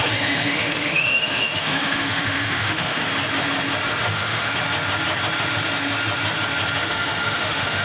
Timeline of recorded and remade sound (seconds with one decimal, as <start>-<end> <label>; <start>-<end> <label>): 0.0-3.0 remade; 3.0-4.0 recorded; 4.0-4.5 remade; 4.5-6.8 recorded; 6.8-7.8 remade